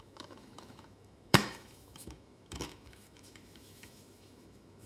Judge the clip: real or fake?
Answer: fake